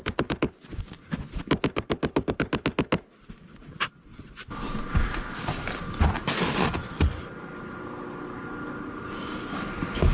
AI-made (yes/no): no